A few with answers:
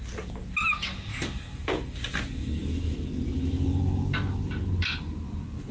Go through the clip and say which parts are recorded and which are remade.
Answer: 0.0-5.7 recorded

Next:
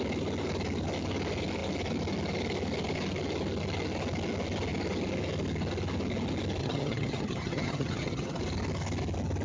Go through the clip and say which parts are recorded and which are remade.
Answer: 0.0-6.6 recorded; 6.6-8.4 remade; 8.4-9.4 recorded

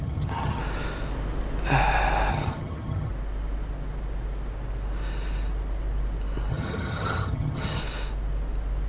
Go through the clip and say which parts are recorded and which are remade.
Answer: 0.0-0.6 remade; 0.6-2.3 recorded; 2.3-3.1 remade; 3.1-6.5 recorded; 6.5-7.8 remade; 7.8-8.9 recorded

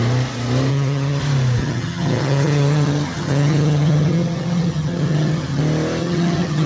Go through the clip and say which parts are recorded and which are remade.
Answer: 0.0-0.7 recorded; 0.7-1.2 remade; 1.2-1.6 recorded; 1.6-5.6 remade; 5.6-6.0 recorded; 6.0-6.7 remade

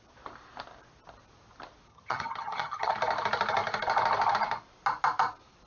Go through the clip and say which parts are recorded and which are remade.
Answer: 0.0-1.9 recorded; 1.9-2.9 remade; 2.9-5.7 recorded

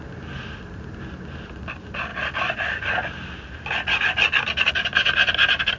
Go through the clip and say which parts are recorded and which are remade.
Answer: 0.0-5.8 recorded